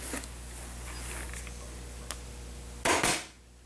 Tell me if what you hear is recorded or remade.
recorded